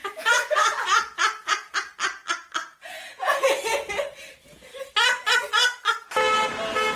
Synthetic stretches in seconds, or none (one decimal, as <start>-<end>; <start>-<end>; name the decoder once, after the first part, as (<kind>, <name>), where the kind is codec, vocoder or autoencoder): 0.0-1.7 (vocoder, Vocos); 2.6-3.9